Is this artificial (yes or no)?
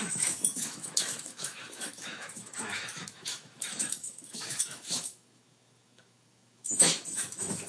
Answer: yes